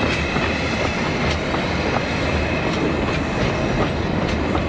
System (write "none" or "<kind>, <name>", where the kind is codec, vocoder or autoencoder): none